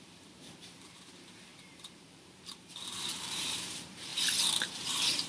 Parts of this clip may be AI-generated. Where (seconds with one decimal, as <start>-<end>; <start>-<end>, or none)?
0.0-5.3